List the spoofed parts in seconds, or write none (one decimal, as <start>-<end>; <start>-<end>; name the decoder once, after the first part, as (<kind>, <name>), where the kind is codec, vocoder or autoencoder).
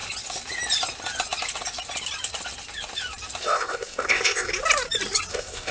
3.4-4.5 (codec, ZipCodec); 5.3-5.7